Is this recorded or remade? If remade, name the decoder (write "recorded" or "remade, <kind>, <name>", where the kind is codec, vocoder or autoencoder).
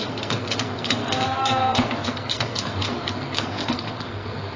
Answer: remade, codec, SNAC